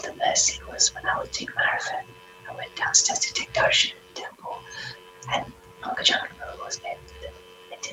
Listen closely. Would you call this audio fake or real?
real